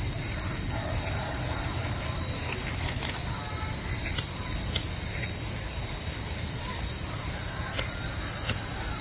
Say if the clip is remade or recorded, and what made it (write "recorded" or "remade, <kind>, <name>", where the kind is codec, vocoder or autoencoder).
recorded